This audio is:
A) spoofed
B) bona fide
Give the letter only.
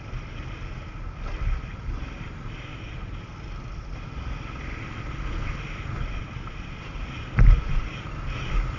B